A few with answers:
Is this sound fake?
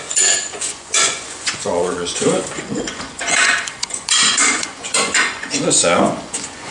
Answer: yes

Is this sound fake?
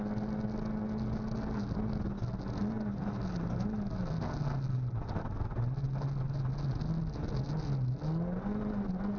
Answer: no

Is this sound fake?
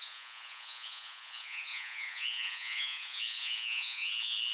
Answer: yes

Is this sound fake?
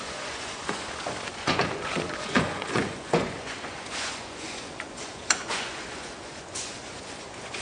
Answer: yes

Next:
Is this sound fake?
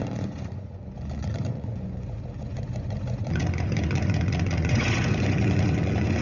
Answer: yes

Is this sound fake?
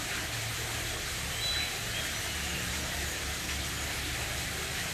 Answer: no